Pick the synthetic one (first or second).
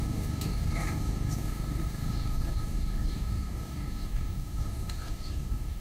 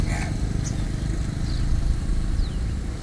first